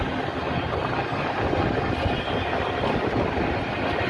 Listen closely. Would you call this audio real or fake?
real